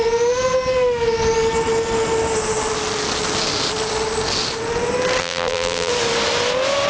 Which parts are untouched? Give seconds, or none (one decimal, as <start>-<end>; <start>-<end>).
0.0-5.2; 5.9-6.9